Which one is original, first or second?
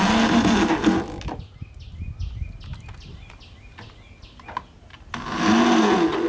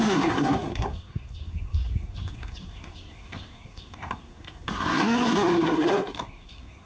first